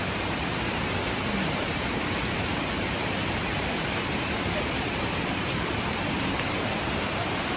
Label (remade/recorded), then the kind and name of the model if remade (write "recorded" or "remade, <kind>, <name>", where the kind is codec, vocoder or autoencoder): remade, vocoder, BigVGAN v2